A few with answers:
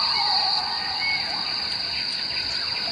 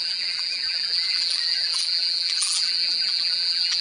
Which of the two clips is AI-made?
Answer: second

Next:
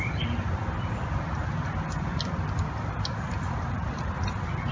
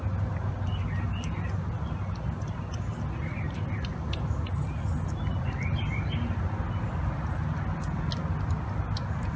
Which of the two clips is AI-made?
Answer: first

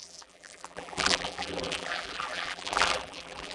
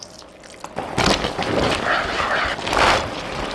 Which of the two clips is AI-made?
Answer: first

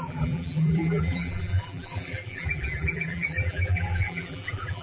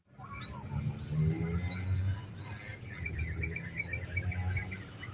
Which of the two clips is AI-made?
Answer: first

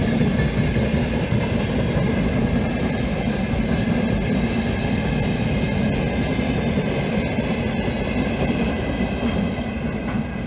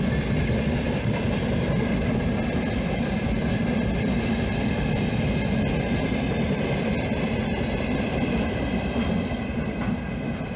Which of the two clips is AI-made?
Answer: second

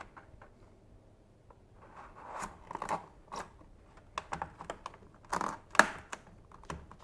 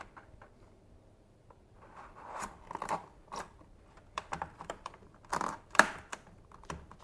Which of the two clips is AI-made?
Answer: second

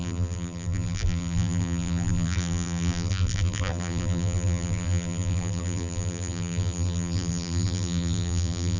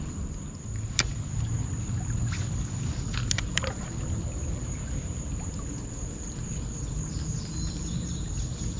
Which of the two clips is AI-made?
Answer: first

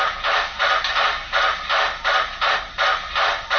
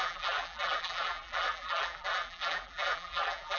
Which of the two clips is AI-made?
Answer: second